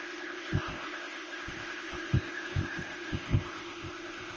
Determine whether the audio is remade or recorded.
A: remade